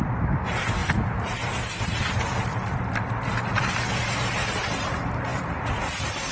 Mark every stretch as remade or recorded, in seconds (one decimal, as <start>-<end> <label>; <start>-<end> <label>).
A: 0.0-6.3 remade